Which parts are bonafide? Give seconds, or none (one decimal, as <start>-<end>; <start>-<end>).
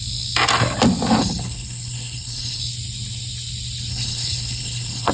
0.0-1.2; 2.6-3.9